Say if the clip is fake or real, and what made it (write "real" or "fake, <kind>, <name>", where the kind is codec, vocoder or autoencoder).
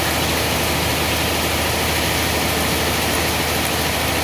real